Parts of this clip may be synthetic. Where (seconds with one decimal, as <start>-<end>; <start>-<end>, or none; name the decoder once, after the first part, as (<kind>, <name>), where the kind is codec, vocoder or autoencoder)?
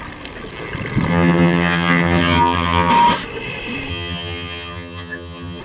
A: 1.1-2.9 (vocoder, HiFi-GAN); 3.9-5.6